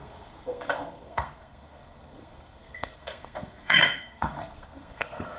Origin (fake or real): fake